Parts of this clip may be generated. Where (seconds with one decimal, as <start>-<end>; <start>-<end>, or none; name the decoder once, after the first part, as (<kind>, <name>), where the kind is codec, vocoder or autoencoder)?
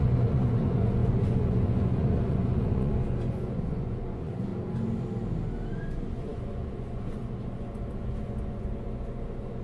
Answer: 0.0-4.5 (vocoder, Vocos); 5.7-9.6